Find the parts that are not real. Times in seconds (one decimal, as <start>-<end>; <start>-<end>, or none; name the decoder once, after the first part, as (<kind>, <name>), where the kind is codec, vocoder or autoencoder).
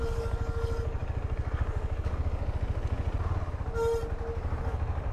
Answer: 0.0-2.4 (codec, DAC); 4.6-5.1